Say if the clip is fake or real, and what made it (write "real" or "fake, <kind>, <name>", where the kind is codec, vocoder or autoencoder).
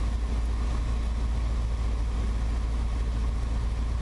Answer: real